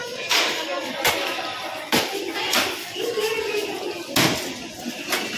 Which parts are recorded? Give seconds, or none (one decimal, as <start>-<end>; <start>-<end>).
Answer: 0.9-2.8; 3.4-5.4